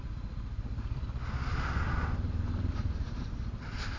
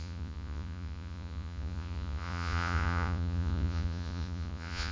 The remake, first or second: second